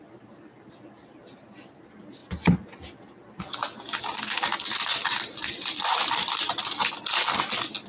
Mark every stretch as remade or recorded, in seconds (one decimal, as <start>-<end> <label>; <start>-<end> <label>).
0.0-7.9 recorded